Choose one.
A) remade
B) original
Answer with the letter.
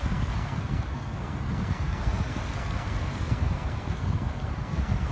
A